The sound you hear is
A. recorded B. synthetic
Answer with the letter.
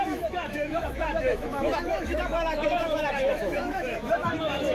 B